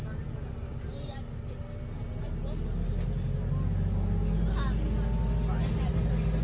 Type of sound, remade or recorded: recorded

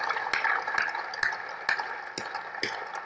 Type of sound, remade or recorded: recorded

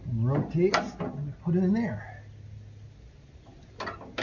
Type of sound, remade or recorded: recorded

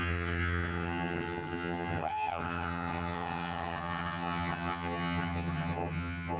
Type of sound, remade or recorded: remade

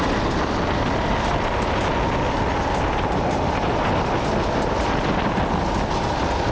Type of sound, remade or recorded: recorded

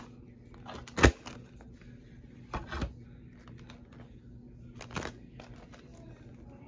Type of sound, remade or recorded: recorded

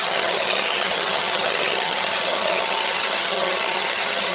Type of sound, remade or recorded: remade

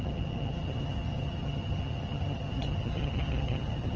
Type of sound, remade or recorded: remade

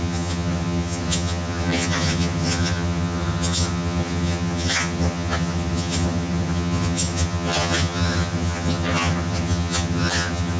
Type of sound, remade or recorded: remade